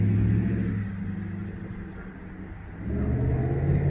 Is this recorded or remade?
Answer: recorded